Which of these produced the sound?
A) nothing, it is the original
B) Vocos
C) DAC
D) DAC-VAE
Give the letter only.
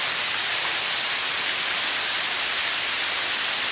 A